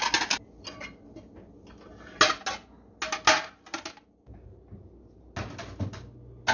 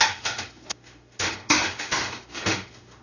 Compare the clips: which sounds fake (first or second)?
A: second